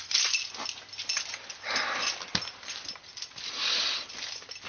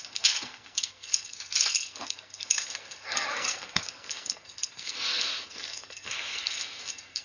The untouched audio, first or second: first